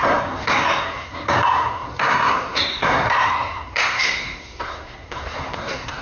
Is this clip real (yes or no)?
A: no